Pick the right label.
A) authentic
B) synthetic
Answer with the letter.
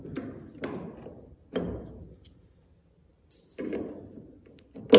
A